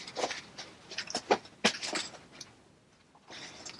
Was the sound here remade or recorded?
recorded